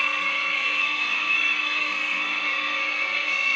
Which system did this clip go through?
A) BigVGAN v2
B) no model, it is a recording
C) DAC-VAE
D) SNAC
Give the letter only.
D